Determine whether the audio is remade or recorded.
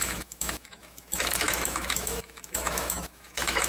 remade